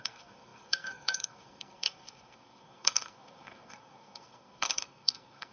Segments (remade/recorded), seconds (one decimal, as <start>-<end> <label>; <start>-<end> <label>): 0.0-5.5 remade